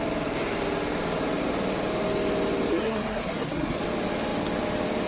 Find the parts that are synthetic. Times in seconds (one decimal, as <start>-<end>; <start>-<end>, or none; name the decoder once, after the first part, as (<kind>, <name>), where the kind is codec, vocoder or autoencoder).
2.7-3.8 (codec, SNAC)